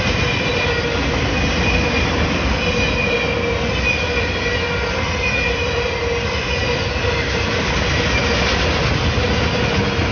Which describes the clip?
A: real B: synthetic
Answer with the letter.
A